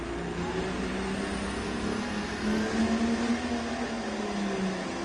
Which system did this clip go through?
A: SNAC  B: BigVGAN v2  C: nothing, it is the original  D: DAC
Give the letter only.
C